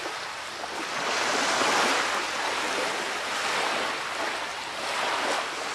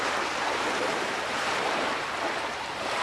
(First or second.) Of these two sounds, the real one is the first